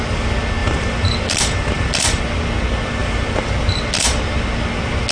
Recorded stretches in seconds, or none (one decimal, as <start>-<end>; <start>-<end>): 0.0-0.6; 2.2-3.0; 3.5-5.1